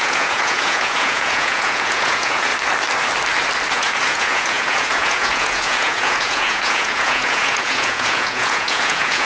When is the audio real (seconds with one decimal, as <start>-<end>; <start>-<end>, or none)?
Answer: 2.5-3.7